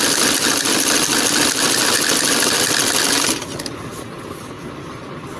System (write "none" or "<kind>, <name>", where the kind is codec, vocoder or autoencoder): none